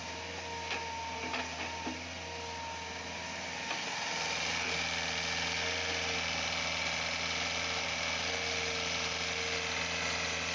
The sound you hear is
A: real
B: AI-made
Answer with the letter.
A